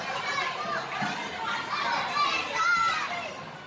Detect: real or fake real